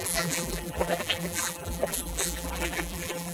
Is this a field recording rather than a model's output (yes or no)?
no